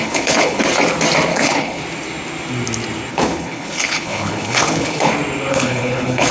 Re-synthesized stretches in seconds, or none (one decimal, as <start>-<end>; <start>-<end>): 0.0-0.6; 1.3-1.8; 3.1-5.1; 5.5-6.3